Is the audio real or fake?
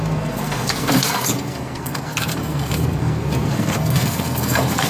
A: fake